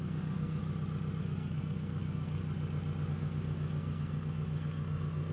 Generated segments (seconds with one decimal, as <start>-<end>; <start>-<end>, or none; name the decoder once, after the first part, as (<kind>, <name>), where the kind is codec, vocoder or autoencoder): 0.0-0.6 (codec, SNAC); 1.2-2.4; 3.1-5.3